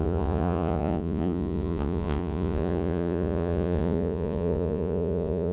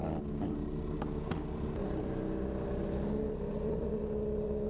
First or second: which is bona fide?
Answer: second